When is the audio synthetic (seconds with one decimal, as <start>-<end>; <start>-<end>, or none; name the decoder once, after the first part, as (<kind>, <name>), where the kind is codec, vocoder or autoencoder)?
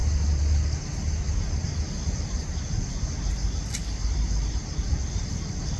none